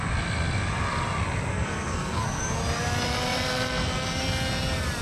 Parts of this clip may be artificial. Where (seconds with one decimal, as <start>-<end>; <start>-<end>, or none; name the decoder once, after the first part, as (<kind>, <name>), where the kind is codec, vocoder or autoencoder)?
1.5-2.4 (codec, SNAC)